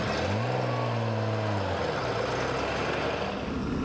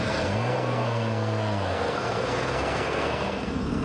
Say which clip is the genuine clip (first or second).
first